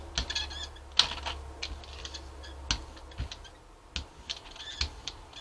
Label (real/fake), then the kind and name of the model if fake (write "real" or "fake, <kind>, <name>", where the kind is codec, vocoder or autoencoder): real